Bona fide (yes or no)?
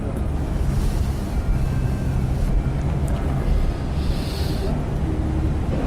yes